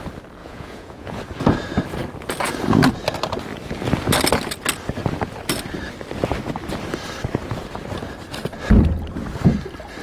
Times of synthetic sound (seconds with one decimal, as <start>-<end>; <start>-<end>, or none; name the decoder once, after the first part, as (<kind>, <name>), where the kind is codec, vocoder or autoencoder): 0.4-1.2 (vocoder, Vocos)